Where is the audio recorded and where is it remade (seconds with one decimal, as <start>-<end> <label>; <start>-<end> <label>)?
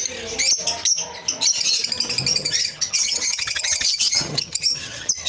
0.0-2.3 recorded; 2.3-5.3 remade